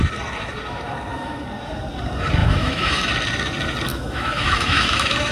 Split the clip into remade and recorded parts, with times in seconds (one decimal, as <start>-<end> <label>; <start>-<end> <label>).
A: 0.0-2.4 recorded; 2.4-3.1 remade; 3.1-3.9 recorded; 3.9-5.3 remade